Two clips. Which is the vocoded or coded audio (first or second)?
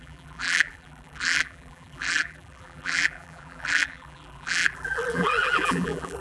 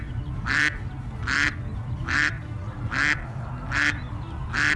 first